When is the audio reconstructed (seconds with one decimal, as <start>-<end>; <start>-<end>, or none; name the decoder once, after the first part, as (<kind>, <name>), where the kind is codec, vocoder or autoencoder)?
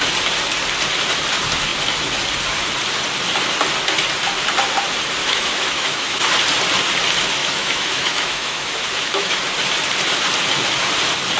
5.2-6.2 (autoencoder, DAC-VAE); 7.4-9.4